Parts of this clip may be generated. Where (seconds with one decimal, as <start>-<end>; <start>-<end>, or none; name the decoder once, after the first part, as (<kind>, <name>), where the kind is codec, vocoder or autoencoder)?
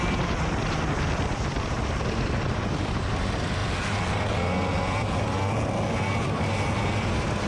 none